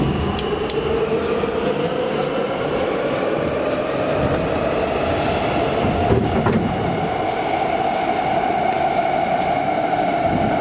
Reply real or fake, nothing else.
real